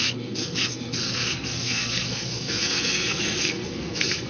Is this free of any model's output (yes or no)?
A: no